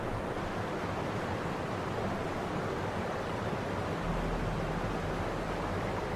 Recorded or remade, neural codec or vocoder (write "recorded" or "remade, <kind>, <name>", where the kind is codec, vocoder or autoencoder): recorded